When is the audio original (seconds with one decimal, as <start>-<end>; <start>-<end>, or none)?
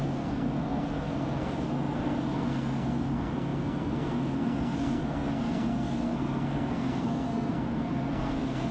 none